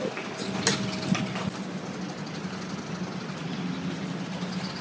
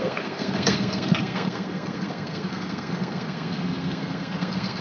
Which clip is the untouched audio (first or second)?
first